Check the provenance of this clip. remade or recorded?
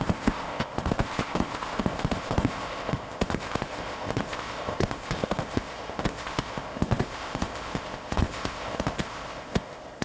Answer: remade